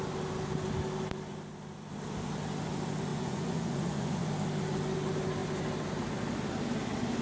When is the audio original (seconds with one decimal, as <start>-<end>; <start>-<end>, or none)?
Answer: 0.0-3.1; 4.3-7.2